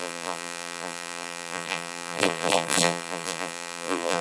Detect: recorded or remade remade